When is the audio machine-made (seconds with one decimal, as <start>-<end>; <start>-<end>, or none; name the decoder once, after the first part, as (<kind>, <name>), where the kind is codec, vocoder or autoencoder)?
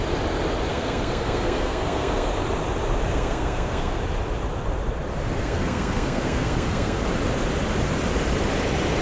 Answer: 0.7-2.3 (codec, SNAC); 3.1-4.0; 5.4-7.0